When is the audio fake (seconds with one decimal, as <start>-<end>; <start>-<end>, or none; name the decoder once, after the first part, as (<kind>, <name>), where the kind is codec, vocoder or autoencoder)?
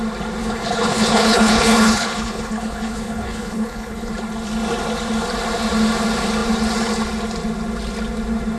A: 0.4-4.1 (codec, HILCodec)